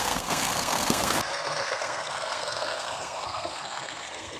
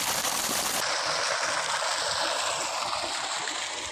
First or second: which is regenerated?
first